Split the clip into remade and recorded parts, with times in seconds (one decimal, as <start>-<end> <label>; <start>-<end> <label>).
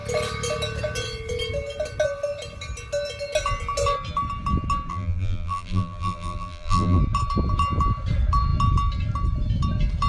0.0-4.9 recorded; 4.9-7.0 remade; 7.0-10.1 recorded